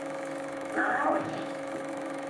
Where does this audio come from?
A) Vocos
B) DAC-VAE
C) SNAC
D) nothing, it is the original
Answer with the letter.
B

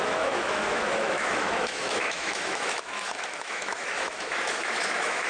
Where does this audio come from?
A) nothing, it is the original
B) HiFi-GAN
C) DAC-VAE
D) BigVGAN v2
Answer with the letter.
C